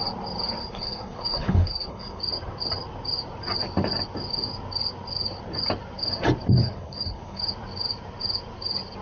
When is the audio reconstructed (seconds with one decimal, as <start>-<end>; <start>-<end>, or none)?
0.6-2.2; 6.6-7.4